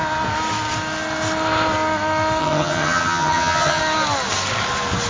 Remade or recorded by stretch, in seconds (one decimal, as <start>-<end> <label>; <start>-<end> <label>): 0.0-2.4 recorded; 2.4-3.8 remade; 3.8-5.1 recorded